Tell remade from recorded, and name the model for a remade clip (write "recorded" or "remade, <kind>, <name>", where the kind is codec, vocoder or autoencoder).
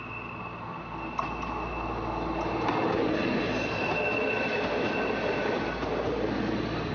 recorded